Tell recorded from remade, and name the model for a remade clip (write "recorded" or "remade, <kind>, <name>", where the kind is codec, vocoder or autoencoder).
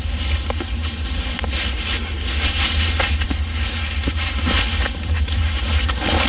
recorded